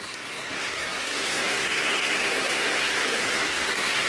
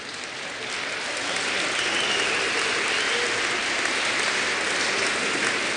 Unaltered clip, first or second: second